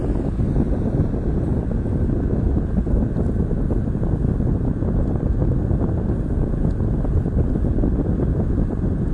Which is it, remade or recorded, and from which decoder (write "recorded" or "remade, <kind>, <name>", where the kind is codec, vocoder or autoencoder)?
recorded